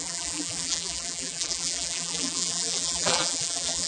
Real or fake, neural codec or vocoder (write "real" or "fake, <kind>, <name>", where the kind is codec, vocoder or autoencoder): fake, vocoder, BigVGAN v2